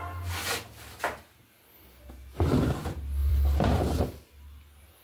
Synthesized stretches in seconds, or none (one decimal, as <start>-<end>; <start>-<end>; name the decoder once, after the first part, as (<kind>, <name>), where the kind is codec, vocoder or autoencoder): 3.2-4.0 (vocoder, BigVGAN v2)